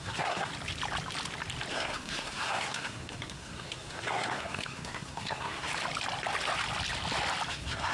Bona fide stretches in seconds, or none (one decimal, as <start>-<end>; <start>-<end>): 0.5-1.7; 5.7-7.5